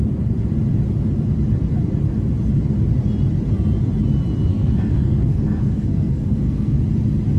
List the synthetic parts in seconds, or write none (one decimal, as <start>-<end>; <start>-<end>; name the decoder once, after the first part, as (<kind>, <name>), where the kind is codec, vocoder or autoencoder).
4.5-6.8 (codec, SNAC)